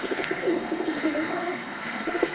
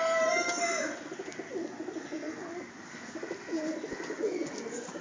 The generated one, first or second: first